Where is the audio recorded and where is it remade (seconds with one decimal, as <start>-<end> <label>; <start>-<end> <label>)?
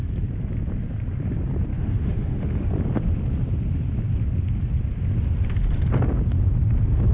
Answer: 0.0-1.7 recorded; 1.7-2.7 remade; 2.7-7.1 recorded